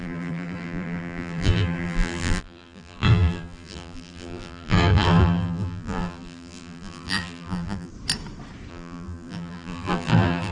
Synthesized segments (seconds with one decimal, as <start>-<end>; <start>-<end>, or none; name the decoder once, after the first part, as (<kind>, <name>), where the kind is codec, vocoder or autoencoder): 0.0-7.9 (vocoder, BigVGAN v2); 8.7-10.5